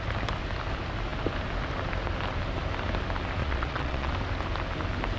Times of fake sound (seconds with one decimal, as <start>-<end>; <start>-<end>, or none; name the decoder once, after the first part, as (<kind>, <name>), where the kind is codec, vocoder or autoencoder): 3.4-4.1 (vocoder, Vocos)